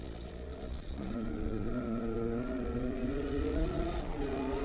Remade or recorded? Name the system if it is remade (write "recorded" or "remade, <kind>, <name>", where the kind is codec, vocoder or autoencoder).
remade, vocoder, Vocos